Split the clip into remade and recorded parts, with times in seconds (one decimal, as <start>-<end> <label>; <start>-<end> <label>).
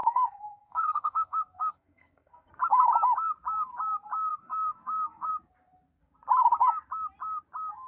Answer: 0.0-2.5 remade; 2.5-4.3 recorded; 4.3-5.3 remade; 5.3-7.9 recorded